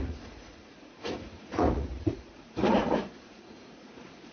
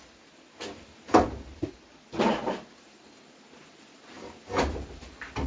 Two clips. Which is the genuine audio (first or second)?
second